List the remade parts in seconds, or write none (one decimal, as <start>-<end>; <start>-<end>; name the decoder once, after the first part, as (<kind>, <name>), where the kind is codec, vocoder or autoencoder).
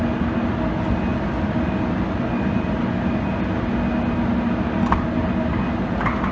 none